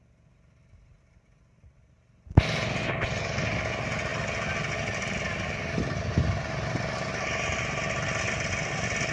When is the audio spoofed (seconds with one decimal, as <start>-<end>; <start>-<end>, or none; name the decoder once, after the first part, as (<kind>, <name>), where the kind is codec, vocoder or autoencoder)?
none